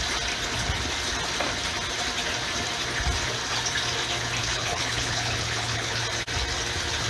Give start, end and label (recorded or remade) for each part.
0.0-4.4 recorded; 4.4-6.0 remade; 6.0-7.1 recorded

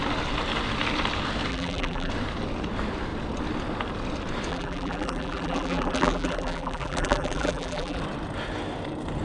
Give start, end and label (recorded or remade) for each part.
0.0-1.5 recorded; 1.5-2.1 remade; 2.1-4.5 recorded; 4.5-8.0 remade; 8.0-9.2 recorded

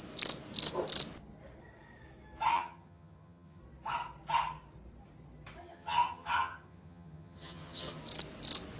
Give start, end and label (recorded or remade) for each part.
0.0-2.5 recorded; 2.5-3.6 remade; 3.6-5.6 recorded; 5.6-8.0 remade; 8.0-8.8 recorded

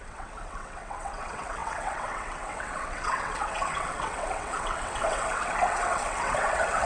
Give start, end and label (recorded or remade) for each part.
0.0-6.9 remade

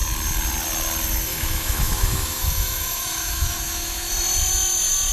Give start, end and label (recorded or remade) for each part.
0.0-1.3 recorded; 1.3-4.1 remade; 4.1-5.1 recorded

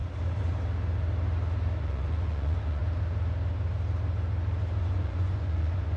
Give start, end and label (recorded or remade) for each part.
0.0-1.8 recorded; 1.8-2.8 remade; 2.8-4.8 recorded; 4.8-6.0 remade